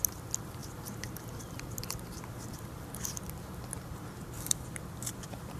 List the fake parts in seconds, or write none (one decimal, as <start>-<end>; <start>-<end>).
0.0-5.6